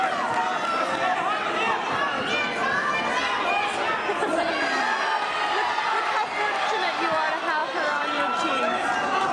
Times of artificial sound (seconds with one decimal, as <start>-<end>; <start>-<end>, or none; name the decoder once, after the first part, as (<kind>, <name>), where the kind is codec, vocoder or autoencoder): 7.6-8.6 (vocoder, BigVGAN v2)